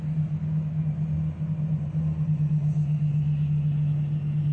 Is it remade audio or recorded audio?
recorded